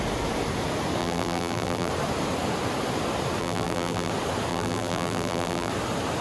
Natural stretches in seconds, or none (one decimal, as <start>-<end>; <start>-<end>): 0.0-1.0; 1.9-3.4; 4.1-4.5; 5.7-6.2